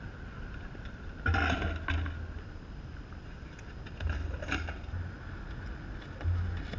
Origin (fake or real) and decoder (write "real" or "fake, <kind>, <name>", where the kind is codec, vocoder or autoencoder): real